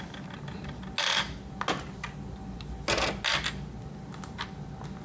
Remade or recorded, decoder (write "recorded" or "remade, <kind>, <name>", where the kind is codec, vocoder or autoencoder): recorded